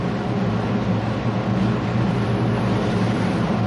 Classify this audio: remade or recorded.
recorded